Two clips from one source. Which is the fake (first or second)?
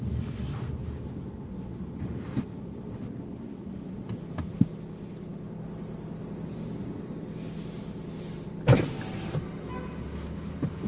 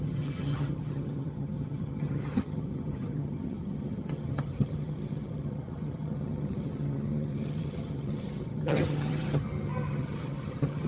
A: second